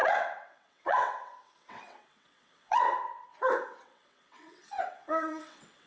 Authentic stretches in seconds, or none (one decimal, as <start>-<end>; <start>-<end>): none